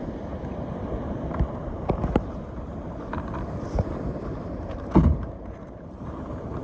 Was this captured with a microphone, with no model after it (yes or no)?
no